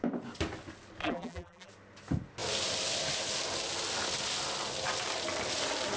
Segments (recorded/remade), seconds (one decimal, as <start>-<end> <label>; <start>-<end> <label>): 0.0-1.0 recorded; 1.0-1.7 remade; 1.7-6.0 recorded